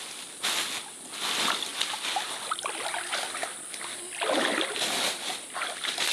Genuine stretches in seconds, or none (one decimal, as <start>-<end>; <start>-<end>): 0.0-6.1